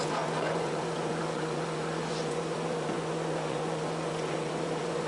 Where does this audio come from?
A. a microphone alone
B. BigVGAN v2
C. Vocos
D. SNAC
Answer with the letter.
C